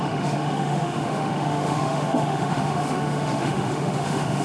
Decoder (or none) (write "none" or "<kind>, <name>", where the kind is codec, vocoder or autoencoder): autoencoder, DAC-VAE